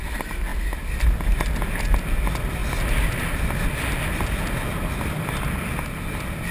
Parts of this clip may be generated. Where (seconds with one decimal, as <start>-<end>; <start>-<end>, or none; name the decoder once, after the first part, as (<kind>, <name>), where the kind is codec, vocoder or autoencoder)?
none